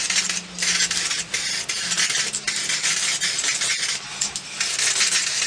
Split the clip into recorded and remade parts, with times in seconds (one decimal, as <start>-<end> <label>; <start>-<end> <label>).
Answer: 0.0-5.5 recorded